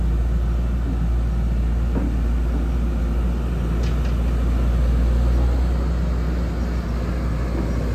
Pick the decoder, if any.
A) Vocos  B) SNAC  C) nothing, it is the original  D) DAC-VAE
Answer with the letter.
C